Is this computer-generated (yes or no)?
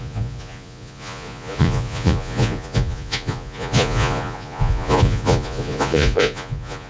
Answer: yes